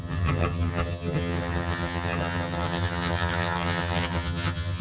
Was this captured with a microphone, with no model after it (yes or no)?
no